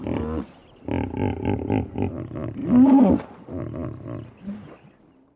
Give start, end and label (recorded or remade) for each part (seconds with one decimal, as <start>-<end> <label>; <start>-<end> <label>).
0.0-5.4 recorded